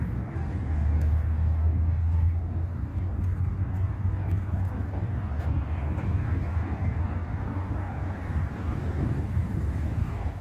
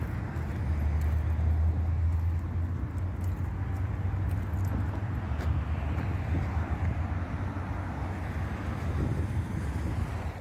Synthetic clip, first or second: first